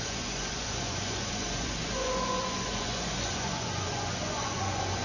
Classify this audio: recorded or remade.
remade